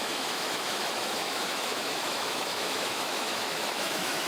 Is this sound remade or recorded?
remade